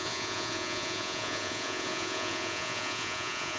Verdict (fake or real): fake